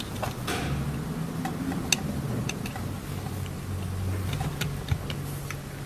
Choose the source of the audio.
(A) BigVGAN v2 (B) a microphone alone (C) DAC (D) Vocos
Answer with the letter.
B